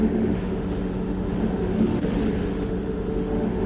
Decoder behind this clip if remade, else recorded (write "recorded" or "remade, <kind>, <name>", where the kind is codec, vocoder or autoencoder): remade, autoencoder, DAC-VAE